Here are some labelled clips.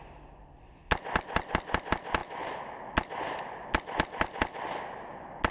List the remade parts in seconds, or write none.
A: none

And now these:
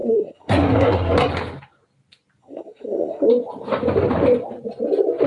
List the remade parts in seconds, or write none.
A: 0.0-1.3; 2.4-3.3

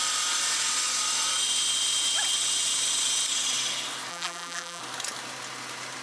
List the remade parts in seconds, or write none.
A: 4.1-4.8

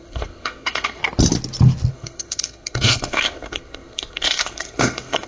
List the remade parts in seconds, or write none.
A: 0.0-1.0; 1.9-5.3